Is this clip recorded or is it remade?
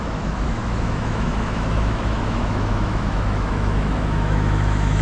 remade